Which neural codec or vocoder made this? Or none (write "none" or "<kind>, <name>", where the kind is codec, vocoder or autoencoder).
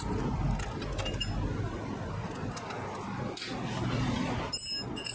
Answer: none